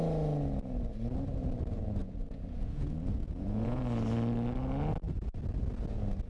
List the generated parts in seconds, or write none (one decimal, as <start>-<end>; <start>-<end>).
2.0-3.8